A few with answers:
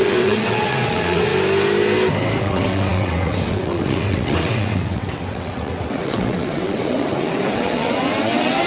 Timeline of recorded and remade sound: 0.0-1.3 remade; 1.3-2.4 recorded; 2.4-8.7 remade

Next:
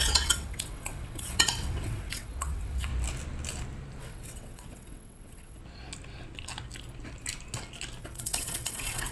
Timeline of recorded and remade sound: 0.0-2.9 remade; 2.9-4.0 recorded; 4.0-5.6 remade; 5.6-8.0 recorded; 8.0-9.1 remade

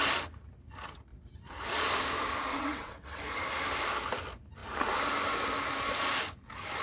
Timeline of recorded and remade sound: 0.0-2.5 recorded; 2.5-3.2 remade; 3.2-6.8 recorded

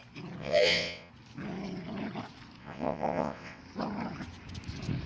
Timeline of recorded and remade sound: 0.0-0.4 recorded; 0.4-1.1 remade; 1.1-2.6 recorded; 2.6-3.6 remade; 3.6-5.1 recorded